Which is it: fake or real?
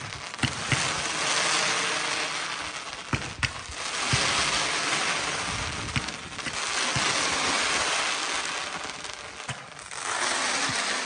real